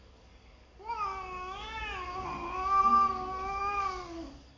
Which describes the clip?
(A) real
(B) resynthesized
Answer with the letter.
B